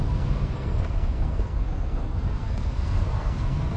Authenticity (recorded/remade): remade